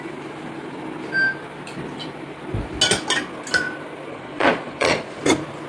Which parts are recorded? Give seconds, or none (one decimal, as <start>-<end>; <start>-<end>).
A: 0.0-4.1; 5.2-5.7